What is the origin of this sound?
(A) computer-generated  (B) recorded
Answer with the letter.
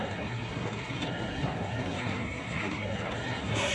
A